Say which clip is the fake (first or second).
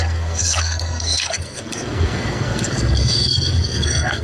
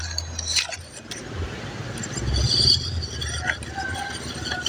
first